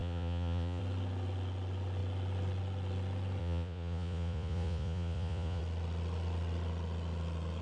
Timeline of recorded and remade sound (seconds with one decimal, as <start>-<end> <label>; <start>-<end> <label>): 0.0-0.8 remade; 0.8-3.4 recorded; 3.4-5.6 remade; 5.6-7.6 recorded